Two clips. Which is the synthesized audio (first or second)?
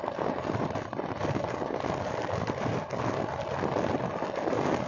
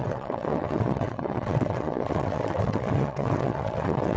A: second